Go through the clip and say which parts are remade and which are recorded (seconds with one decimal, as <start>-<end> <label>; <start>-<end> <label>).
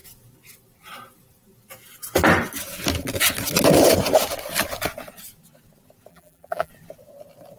0.0-6.1 recorded; 6.1-6.7 remade; 6.7-7.6 recorded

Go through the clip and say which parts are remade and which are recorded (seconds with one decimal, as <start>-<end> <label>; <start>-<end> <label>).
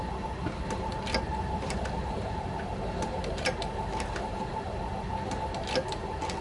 0.0-1.3 recorded; 1.3-4.5 remade; 4.5-6.4 recorded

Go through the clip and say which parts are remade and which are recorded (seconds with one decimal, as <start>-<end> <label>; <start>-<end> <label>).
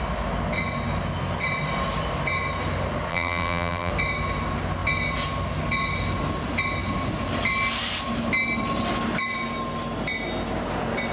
0.0-3.1 recorded; 3.1-3.9 remade; 3.9-11.1 recorded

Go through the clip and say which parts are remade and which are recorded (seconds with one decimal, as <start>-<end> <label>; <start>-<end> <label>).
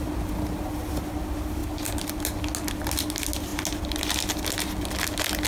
0.0-5.5 recorded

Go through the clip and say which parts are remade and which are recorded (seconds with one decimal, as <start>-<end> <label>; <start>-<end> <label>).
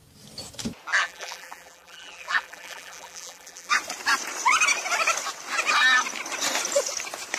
0.0-1.0 recorded; 1.0-3.7 remade; 3.7-7.4 recorded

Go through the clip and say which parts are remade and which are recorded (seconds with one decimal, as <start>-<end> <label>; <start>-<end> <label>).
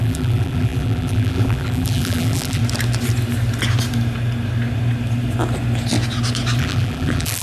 0.0-2.6 remade; 2.6-6.6 recorded; 6.6-7.4 remade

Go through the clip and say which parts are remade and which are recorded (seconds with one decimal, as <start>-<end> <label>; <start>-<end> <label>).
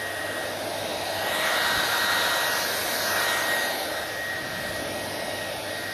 0.0-5.9 recorded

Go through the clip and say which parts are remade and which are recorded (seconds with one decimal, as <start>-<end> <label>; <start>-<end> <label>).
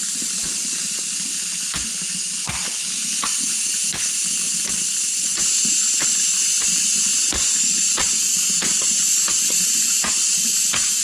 0.0-11.0 recorded